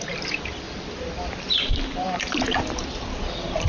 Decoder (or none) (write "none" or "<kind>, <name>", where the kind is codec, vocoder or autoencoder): vocoder, BigVGAN v2